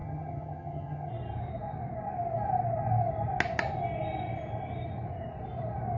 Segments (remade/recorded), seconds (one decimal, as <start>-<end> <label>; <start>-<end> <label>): 0.0-1.1 remade; 1.1-6.0 recorded